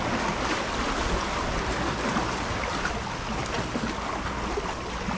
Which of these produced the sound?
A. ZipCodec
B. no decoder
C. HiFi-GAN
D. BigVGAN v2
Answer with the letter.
B